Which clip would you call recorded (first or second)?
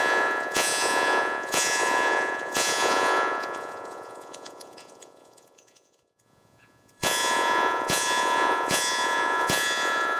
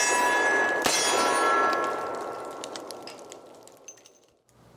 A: second